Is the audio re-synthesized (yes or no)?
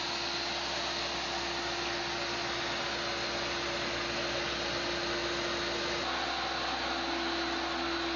no